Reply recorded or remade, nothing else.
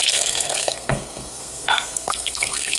remade